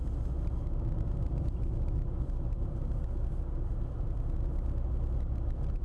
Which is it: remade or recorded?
recorded